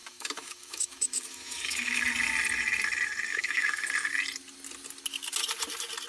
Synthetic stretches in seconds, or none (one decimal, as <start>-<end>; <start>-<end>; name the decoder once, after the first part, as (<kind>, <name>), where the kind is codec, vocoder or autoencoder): 0.0-2.0 (autoencoder, DAC-VAE); 3.3-3.8